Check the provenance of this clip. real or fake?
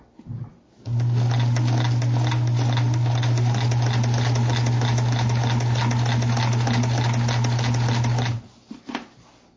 real